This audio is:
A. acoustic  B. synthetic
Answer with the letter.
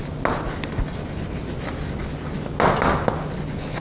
A